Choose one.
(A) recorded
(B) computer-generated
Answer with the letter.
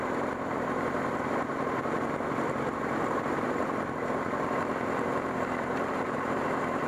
B